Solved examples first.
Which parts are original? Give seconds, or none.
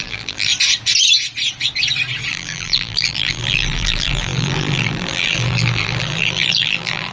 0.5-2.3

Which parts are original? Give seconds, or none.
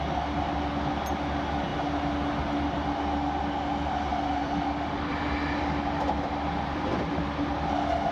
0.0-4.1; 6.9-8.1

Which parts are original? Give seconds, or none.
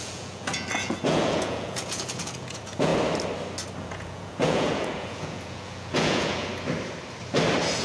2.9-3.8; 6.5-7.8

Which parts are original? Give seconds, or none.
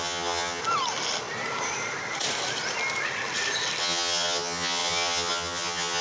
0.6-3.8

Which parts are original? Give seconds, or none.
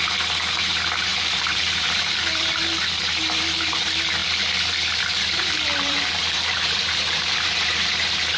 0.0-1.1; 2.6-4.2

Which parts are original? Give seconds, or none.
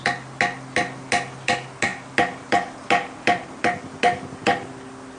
0.0-5.2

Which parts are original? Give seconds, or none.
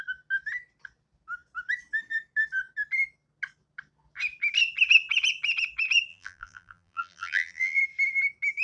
0.0-6.1; 7.8-8.6